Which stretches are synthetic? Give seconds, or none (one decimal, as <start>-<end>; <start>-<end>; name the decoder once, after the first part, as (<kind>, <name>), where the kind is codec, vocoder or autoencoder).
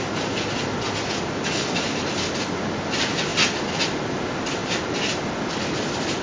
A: none